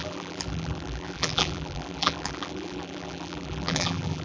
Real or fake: fake